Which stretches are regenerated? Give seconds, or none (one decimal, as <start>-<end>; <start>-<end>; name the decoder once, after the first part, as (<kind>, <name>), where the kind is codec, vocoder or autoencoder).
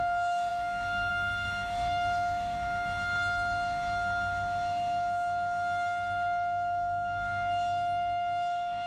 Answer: 0.0-8.9 (autoencoder, DAC-VAE)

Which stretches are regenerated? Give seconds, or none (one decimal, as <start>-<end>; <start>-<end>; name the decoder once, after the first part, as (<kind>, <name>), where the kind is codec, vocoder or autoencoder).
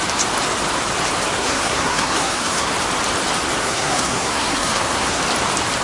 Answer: 1.4-2.7 (codec, SNAC); 3.6-5.2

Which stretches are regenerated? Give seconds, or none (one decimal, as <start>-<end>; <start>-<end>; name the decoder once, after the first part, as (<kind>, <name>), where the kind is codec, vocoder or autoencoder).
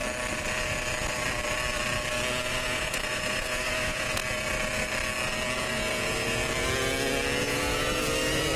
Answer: 2.5-4.2 (vocoder, Vocos); 5.6-6.4; 7.4-8.6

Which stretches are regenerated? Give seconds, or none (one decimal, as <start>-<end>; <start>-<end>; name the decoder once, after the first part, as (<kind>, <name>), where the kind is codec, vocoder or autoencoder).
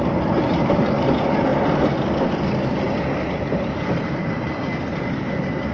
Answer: none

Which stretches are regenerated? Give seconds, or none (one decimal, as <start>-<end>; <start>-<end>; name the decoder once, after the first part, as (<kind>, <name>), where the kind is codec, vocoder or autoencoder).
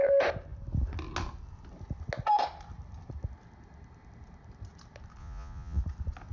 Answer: 5.2-5.8 (vocoder, Vocos)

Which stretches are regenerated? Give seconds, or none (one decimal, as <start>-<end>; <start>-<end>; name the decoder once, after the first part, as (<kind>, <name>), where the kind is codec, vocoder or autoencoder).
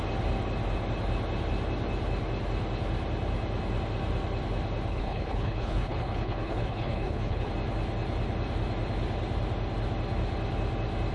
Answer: 4.9-7.5 (codec, HILCodec)